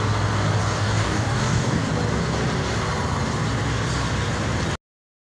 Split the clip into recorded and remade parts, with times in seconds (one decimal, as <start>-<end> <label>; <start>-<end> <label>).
0.0-0.6 recorded; 0.6-1.9 remade; 1.9-5.2 recorded

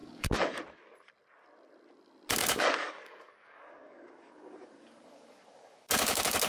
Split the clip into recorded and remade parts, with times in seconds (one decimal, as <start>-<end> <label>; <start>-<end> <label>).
0.0-0.6 remade; 0.6-2.4 recorded; 2.4-6.5 remade

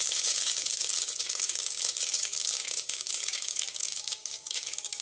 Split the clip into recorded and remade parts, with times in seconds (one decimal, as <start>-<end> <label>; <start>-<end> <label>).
0.0-5.0 remade

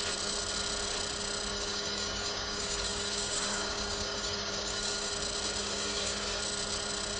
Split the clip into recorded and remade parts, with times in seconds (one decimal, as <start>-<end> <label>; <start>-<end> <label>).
0.0-1.5 recorded; 1.5-5.1 remade; 5.1-5.6 recorded; 5.6-6.4 remade; 6.4-7.2 recorded